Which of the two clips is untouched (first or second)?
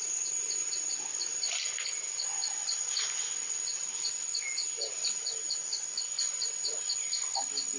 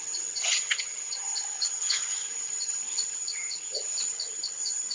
first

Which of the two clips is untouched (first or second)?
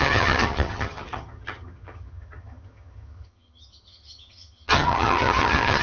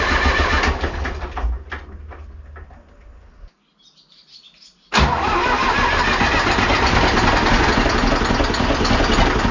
second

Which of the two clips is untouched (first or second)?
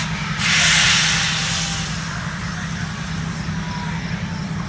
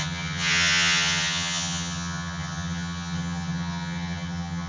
first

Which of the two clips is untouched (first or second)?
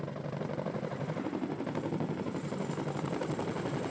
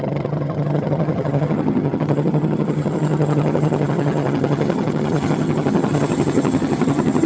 first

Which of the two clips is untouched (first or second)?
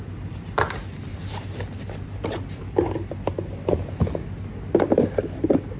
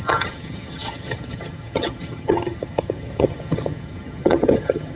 first